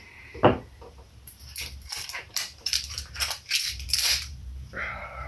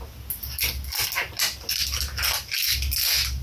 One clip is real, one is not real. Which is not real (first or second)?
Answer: first